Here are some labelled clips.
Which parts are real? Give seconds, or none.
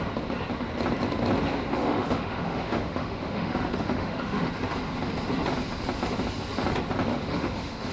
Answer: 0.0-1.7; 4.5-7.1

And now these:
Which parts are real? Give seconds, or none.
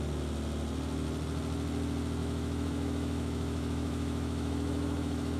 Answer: 0.0-2.2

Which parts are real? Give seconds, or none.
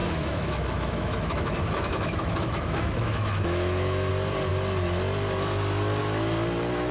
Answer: 4.1-6.9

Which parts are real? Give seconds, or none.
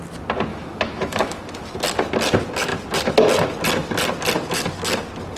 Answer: 0.0-0.5; 1.4-5.4